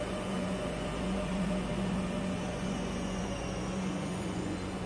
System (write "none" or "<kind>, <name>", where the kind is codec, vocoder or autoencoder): vocoder, Vocos